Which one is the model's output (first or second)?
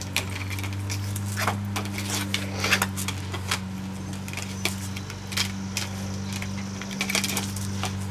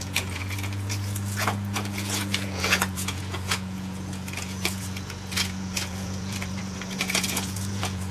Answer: second